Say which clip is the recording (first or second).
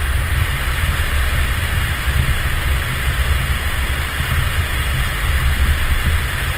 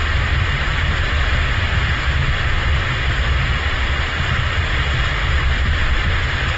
first